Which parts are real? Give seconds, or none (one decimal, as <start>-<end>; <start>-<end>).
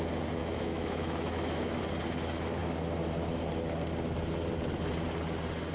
0.0-0.4; 1.8-5.7